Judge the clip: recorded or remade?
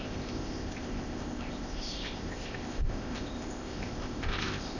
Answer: remade